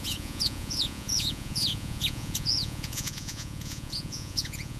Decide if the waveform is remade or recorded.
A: remade